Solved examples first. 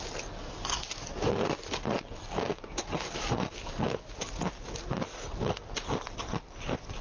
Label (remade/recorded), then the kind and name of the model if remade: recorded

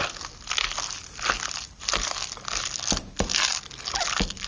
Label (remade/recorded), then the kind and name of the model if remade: recorded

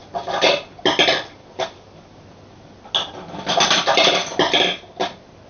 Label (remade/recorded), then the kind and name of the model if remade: recorded